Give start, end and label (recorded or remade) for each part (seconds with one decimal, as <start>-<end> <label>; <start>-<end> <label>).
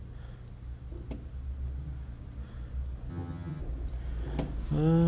0.0-3.1 recorded; 3.1-3.6 remade; 3.6-5.1 recorded